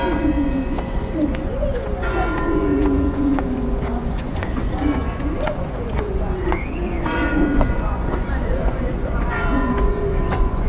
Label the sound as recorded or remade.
remade